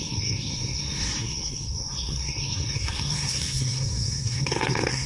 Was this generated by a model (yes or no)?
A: yes